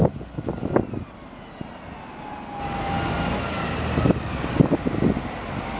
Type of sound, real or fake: real